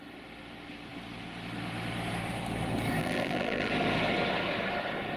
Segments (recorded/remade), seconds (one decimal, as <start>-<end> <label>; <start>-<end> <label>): 0.0-3.0 recorded; 3.0-3.7 remade; 3.7-5.2 recorded